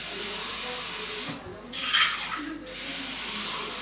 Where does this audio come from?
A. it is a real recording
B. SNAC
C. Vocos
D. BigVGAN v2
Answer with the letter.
A